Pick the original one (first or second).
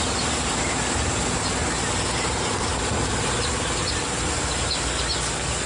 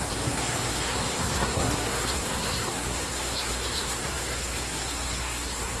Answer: first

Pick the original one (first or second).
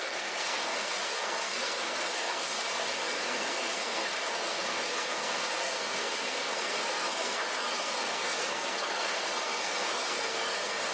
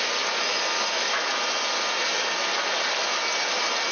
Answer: second